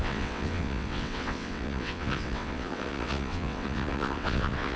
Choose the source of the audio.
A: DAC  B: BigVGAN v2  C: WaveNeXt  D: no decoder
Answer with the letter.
C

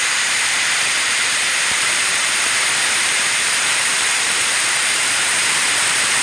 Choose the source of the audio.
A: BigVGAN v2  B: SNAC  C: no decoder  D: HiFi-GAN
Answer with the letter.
A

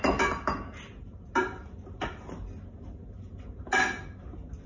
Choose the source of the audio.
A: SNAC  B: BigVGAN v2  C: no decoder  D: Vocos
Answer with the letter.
C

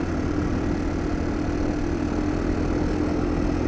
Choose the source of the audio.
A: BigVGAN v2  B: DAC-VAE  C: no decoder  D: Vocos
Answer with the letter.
C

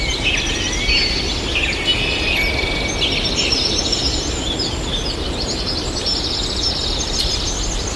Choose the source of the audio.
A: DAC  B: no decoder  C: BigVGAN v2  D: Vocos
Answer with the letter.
B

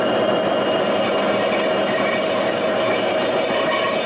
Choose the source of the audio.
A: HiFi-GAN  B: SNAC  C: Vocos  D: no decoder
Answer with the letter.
D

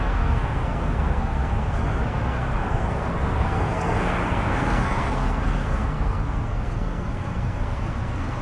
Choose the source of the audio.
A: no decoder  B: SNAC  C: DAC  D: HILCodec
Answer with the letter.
B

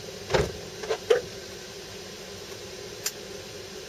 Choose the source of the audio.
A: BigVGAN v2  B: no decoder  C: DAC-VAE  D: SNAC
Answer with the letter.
B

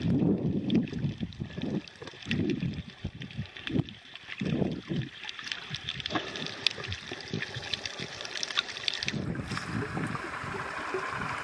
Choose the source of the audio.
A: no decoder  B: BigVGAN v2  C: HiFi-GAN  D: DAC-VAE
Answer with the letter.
A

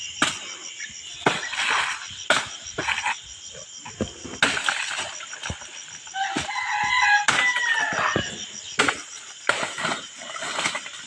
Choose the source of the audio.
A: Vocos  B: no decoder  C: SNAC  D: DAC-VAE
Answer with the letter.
B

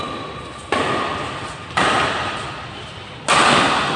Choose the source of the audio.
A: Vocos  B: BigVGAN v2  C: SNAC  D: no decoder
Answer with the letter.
D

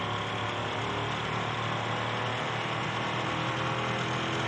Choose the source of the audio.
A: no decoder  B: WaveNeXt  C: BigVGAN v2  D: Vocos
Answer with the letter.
A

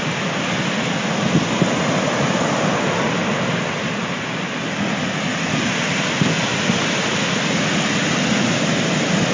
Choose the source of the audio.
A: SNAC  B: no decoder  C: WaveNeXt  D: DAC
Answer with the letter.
B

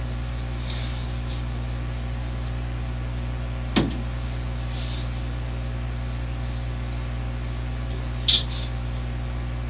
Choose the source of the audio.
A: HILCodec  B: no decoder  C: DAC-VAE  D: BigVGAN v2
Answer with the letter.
B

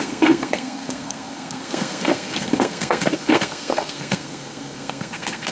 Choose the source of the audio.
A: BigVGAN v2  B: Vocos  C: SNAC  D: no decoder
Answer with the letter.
C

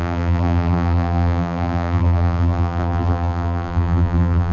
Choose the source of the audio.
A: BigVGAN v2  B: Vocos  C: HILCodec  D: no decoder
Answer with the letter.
A